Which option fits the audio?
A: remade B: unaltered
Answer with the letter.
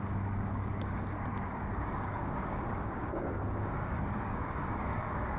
A